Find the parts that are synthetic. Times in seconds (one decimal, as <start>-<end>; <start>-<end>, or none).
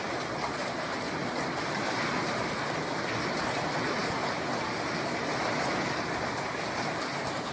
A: none